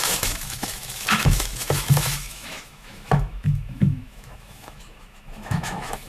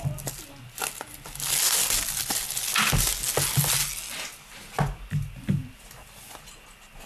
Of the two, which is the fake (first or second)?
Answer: first